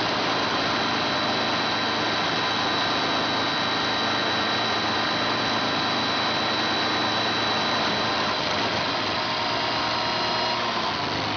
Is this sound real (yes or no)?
yes